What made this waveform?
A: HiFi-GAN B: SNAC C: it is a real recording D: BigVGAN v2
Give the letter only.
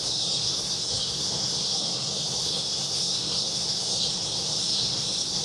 B